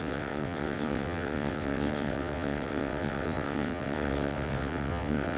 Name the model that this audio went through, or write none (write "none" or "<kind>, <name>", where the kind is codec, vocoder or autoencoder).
vocoder, WaveNeXt